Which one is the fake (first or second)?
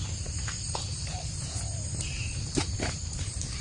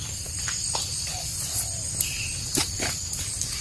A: first